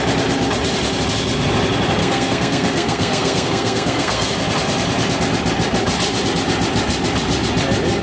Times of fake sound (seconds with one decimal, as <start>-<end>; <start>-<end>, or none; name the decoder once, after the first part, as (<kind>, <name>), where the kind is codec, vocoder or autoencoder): 2.0-4.3 (codec, SNAC)